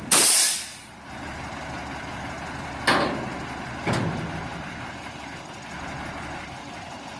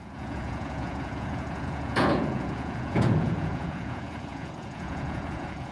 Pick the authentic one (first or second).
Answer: first